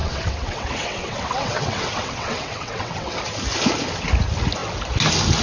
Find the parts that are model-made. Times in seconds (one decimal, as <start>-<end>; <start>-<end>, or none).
0.0-3.2